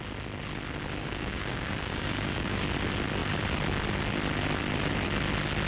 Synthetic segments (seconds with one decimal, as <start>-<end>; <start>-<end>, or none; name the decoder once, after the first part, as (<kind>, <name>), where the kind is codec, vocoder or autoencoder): 1.0-2.6 (codec, DAC)